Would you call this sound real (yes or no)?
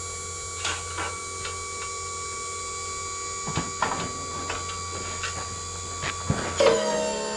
yes